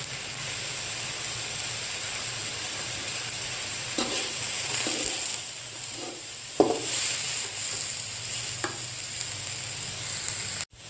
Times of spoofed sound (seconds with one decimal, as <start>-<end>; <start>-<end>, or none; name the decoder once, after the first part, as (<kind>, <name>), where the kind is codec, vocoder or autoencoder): 2.5-4.8 (vocoder, BigVGAN v2); 5.3-7.2